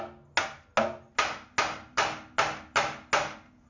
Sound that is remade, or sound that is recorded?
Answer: recorded